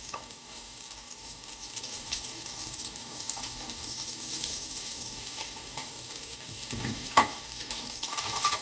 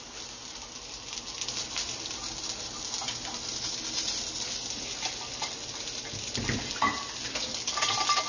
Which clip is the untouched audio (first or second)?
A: second